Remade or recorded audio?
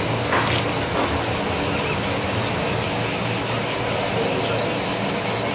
recorded